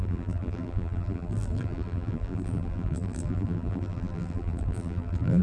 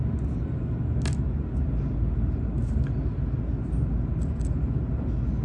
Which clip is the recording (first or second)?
second